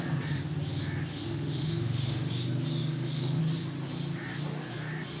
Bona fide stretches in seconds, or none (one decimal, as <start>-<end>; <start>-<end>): 0.0-1.1; 2.3-2.8; 3.4-5.2